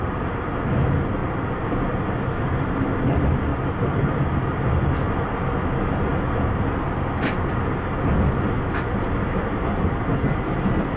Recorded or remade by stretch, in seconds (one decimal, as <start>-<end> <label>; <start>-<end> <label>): 0.0-11.0 recorded